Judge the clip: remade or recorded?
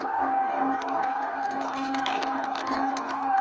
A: remade